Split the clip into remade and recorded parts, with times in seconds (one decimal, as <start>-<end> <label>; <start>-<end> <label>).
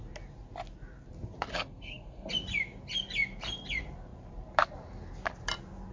0.0-1.5 recorded; 1.5-2.3 remade; 2.3-5.9 recorded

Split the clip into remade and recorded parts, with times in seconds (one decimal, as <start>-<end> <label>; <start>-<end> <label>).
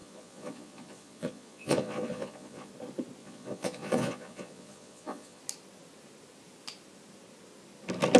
0.0-2.7 remade; 2.7-3.2 recorded; 3.2-5.4 remade; 5.4-8.2 recorded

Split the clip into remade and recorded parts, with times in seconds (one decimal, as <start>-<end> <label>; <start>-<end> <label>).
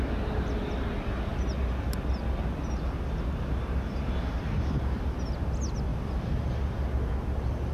0.0-7.7 recorded